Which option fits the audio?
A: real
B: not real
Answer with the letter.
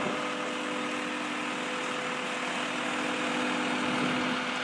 A